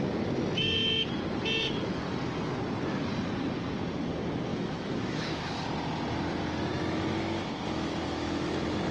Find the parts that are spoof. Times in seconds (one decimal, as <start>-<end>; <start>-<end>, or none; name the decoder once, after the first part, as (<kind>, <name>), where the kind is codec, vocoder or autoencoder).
4.5-5.5 (autoencoder, DAC-VAE); 6.7-8.9